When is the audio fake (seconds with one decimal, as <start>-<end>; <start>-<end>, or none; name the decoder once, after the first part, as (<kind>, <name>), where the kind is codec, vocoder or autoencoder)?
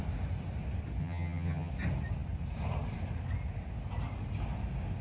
1.0-1.7 (vocoder, HiFi-GAN)